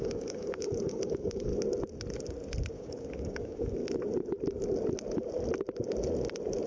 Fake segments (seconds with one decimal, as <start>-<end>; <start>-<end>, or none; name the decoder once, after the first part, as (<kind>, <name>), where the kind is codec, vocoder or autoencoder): 0.0-1.5 (codec, DAC); 2.8-3.8